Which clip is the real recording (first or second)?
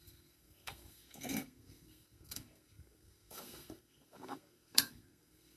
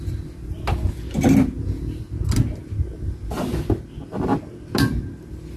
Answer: second